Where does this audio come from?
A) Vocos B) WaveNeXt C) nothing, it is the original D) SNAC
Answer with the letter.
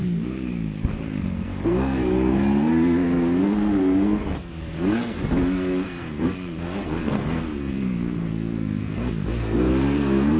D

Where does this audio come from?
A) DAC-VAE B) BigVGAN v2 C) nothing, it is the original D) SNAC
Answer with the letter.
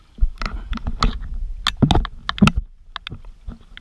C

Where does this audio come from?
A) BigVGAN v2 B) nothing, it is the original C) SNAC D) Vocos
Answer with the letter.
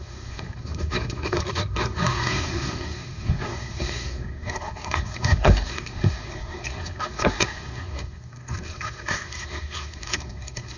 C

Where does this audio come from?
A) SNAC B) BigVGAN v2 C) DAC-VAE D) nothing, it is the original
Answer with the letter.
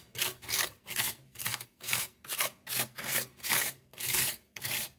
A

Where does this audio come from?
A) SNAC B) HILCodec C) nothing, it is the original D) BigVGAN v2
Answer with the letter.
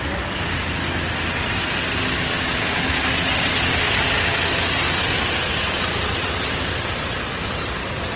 C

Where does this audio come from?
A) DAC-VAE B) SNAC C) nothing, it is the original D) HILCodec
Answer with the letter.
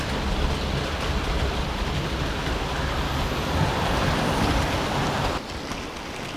C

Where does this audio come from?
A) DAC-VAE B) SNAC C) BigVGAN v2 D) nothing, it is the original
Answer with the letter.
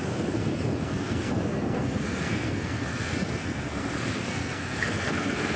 B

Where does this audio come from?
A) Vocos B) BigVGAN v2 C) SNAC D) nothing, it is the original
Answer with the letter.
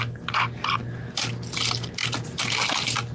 D